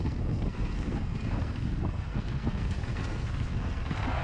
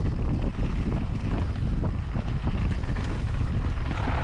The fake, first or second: first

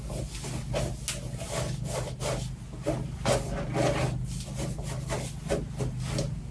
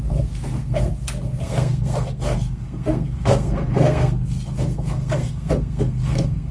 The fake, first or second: second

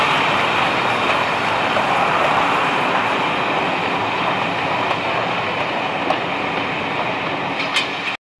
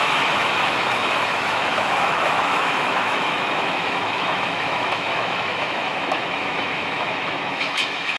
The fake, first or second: second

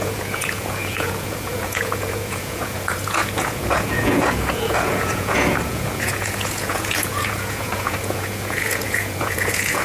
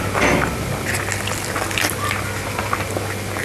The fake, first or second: first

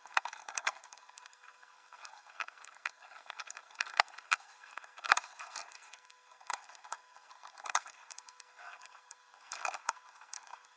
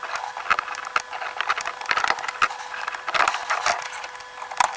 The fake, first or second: first